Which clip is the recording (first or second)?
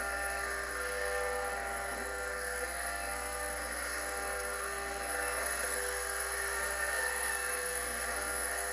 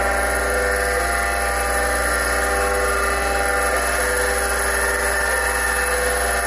second